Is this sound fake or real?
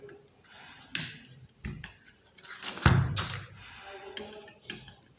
real